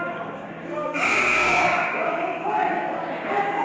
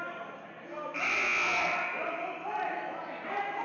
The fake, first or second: first